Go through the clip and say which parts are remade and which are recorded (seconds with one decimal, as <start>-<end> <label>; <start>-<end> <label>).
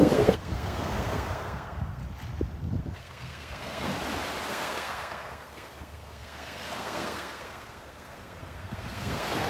0.0-2.0 remade; 2.0-2.8 recorded; 2.8-3.9 remade; 3.9-4.5 recorded; 4.5-9.5 remade